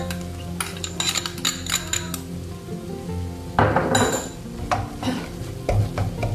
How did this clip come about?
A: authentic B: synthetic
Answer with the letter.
A